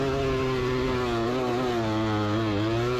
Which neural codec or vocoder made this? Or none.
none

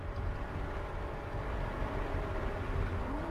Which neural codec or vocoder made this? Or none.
none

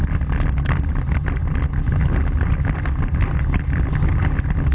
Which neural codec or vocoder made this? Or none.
none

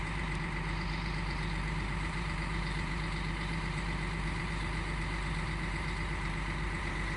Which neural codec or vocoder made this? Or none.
vocoder, BigVGAN v2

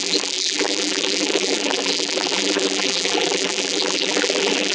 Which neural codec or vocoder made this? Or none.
vocoder, BigVGAN v2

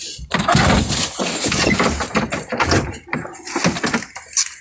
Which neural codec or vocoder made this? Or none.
none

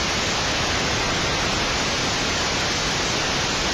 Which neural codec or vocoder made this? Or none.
none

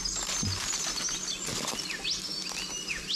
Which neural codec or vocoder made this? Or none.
none